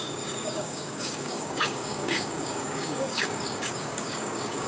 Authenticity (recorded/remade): remade